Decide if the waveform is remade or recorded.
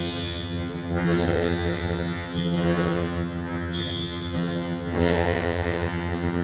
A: remade